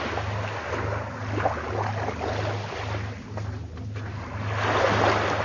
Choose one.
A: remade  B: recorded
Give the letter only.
B